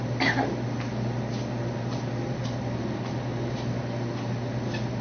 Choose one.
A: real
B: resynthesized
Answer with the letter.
A